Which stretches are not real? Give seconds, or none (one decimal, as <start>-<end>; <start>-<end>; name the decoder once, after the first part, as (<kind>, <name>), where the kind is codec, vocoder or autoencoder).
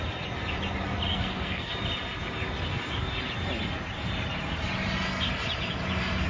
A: 1.1-1.7 (codec, SNAC)